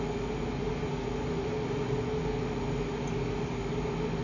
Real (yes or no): yes